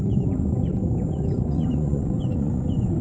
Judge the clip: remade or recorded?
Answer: remade